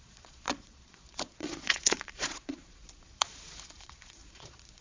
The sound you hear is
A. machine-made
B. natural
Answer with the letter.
A